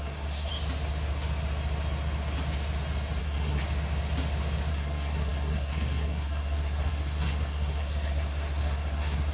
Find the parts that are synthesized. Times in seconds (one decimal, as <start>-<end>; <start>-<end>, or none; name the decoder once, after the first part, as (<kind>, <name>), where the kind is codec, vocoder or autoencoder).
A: 0.0-0.5 (codec, SNAC); 3.2-3.6; 4.7-9.3